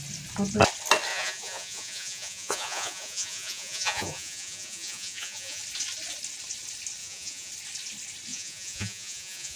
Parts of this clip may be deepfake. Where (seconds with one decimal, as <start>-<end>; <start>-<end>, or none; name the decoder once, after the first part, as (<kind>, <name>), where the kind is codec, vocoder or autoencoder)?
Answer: 1.1-5.6 (vocoder, Vocos); 7.0-7.5; 8.3-9.6